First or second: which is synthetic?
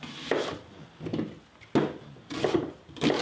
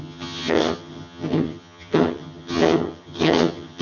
second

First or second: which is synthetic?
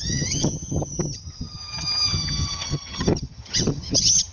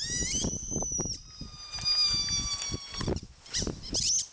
first